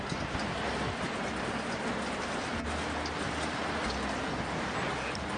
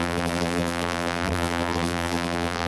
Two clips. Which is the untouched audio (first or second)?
first